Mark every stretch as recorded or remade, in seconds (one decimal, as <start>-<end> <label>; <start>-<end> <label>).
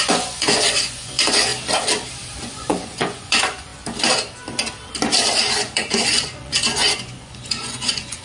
0.0-1.5 remade; 1.5-2.4 recorded; 2.4-3.7 remade; 3.7-5.5 recorded; 5.5-8.2 remade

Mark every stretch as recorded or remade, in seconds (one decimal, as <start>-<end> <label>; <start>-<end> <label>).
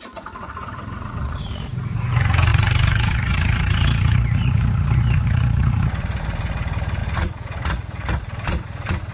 0.0-9.1 remade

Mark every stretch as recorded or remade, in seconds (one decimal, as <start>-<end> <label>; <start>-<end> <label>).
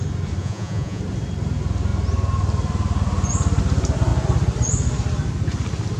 0.0-0.4 recorded; 0.4-1.0 remade; 1.0-6.0 recorded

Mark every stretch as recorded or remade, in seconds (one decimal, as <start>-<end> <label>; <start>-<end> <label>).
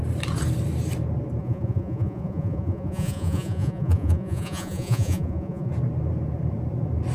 0.0-1.4 recorded; 1.4-5.7 remade; 5.7-7.1 recorded